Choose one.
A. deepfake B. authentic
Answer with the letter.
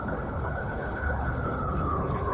A